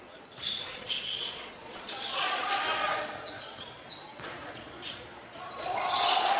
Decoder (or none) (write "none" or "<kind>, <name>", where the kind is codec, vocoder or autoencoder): vocoder, Vocos